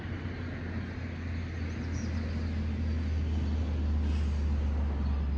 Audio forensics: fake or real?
real